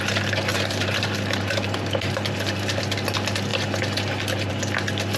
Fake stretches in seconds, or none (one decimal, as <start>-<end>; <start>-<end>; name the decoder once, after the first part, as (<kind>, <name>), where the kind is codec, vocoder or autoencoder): 0.5-2.8 (vocoder, BigVGAN v2)